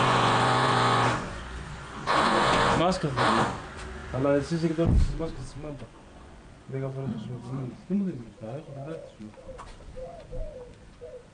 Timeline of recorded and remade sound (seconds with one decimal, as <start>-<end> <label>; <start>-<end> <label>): 0.0-11.3 remade